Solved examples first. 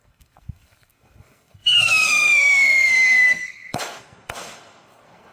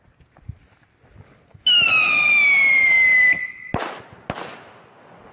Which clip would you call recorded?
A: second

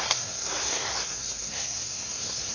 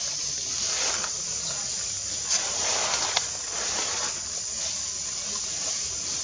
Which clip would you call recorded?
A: second